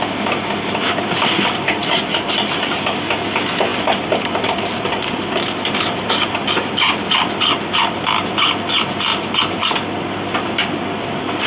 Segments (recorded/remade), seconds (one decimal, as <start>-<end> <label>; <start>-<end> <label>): 0.0-1.8 recorded; 1.8-2.8 remade; 2.8-3.7 recorded; 3.7-6.5 remade; 6.5-11.5 recorded